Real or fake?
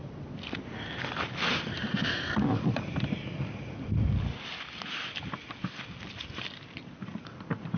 real